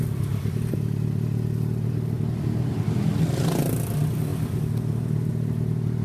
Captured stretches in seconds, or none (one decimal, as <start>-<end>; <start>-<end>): 0.0-6.0

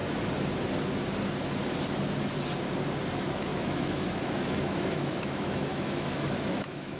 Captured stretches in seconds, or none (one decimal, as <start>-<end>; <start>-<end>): 0.0-3.1

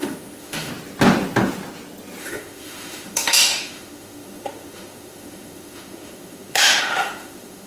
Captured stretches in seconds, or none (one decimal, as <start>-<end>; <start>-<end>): 0.7-2.2